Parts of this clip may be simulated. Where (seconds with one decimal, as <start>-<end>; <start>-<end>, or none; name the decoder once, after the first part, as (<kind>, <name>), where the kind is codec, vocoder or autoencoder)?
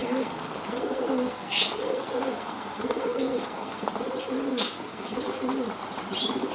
0.0-3.9 (codec, SNAC); 4.5-5.2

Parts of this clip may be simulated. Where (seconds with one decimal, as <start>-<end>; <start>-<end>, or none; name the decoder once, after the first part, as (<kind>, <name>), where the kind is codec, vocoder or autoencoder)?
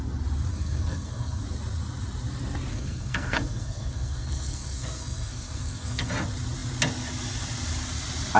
0.5-1.4 (codec, SNAC); 2.7-6.1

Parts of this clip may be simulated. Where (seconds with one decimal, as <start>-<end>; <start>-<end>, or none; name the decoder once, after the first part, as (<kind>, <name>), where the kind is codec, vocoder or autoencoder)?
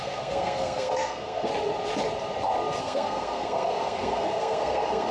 0.0-1.5 (codec, SNAC); 2.8-5.1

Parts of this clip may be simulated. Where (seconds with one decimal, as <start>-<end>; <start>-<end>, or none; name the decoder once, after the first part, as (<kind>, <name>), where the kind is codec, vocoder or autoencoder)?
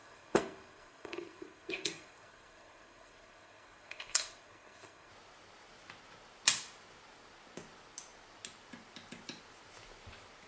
0.0-5.1 (codec, SNAC)